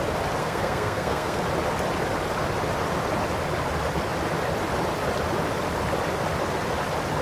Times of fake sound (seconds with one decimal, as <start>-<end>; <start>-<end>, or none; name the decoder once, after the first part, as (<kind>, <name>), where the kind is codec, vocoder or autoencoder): 0.4-1.4 (codec, SNAC)

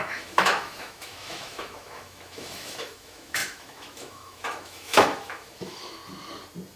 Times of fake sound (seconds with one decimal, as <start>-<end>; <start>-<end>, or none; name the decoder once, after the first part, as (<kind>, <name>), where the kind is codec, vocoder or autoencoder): 0.0-6.0 (autoencoder, DAC-VAE)

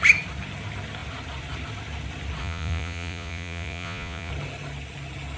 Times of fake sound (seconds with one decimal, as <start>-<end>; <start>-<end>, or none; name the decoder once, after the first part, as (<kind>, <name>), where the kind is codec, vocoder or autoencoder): 2.4-4.3 (vocoder, Vocos)

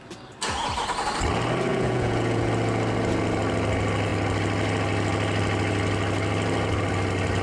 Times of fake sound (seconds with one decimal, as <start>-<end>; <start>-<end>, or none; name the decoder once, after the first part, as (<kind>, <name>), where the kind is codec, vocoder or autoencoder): 1.7-2.5 (vocoder, Vocos)

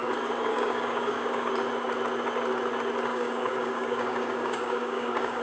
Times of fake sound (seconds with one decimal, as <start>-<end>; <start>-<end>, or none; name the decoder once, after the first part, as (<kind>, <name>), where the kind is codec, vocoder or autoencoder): 0.5-1.5 (codec, DAC); 3.1-5.4

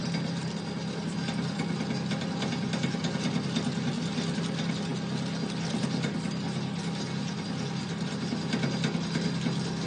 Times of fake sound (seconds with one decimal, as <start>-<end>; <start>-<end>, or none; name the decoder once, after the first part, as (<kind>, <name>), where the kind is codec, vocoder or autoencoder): none

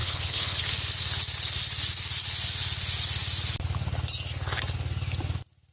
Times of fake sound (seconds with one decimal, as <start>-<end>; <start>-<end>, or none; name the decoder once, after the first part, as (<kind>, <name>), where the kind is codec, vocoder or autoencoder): 0.0-0.6 (codec, HILCodec)

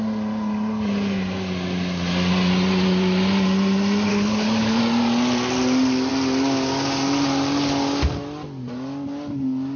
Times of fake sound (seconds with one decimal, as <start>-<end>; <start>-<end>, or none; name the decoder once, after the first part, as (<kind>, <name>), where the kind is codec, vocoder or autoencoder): 4.1-4.8 (codec, HILCodec)